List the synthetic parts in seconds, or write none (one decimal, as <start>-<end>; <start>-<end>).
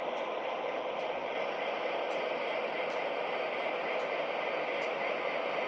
none